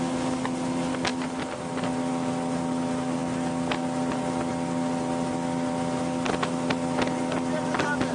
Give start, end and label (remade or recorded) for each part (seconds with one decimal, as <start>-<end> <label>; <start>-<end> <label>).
0.0-8.1 recorded

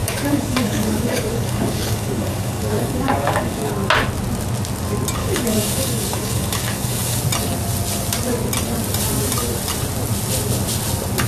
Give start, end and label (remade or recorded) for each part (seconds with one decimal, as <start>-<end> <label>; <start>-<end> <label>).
0.0-3.7 remade; 3.7-5.2 recorded; 5.2-7.2 remade; 7.2-11.3 recorded